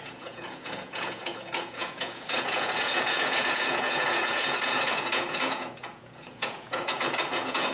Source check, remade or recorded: remade